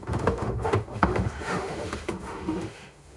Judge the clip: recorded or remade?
remade